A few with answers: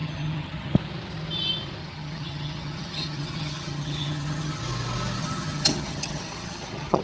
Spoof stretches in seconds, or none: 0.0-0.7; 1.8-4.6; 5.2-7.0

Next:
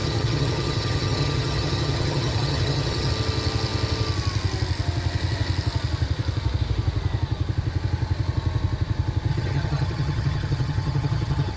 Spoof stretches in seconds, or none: 0.0-3.1; 9.3-11.6

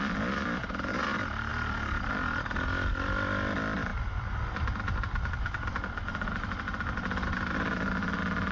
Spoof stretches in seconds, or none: none